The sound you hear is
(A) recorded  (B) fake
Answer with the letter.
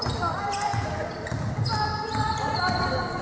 A